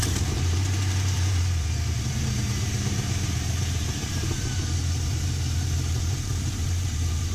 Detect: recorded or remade remade